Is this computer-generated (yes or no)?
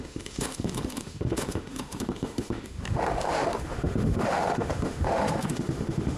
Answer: yes